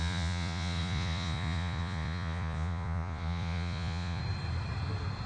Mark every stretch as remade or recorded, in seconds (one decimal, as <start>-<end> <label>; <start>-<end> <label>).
0.0-4.2 remade; 4.2-5.3 recorded